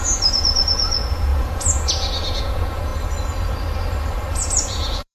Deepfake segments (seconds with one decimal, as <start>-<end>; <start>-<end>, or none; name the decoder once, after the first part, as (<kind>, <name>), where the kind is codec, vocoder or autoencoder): 0.0-2.9 (vocoder, Vocos); 4.3-5.1